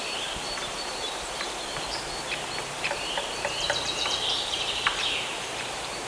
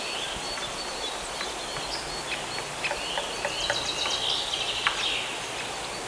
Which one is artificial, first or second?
first